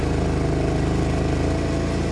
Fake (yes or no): no